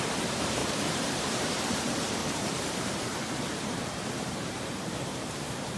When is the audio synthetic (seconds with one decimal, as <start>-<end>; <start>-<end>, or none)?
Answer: 0.6-1.8; 2.2-5.8